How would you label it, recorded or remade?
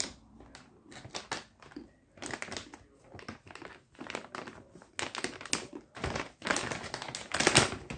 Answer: recorded